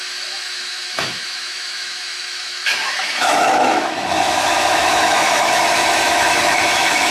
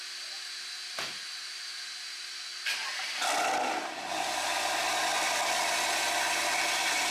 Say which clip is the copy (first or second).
first